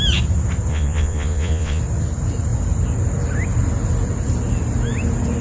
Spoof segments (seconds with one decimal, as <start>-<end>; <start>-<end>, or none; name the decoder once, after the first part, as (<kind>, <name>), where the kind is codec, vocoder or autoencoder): 0.7-1.8 (vocoder, Vocos)